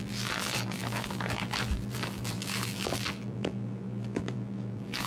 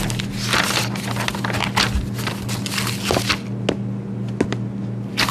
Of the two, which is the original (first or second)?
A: second